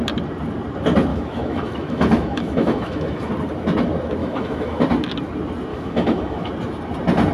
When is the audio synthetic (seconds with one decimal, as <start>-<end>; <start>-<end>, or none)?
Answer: 1.1-3.3; 4.2-4.8; 5.7-6.5